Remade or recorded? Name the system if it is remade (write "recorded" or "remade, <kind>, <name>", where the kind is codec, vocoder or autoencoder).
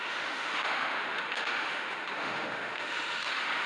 remade, autoencoder, DAC-VAE